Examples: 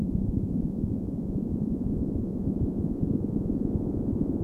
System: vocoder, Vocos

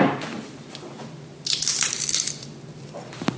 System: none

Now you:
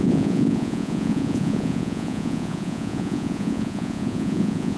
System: vocoder, Vocos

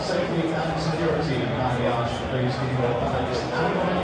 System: none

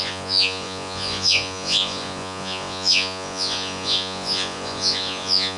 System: vocoder, Vocos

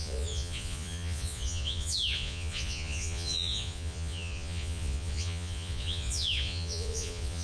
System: vocoder, Vocos